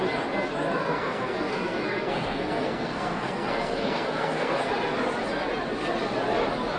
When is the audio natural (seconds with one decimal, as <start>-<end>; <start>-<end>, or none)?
0.0-0.8; 4.7-6.8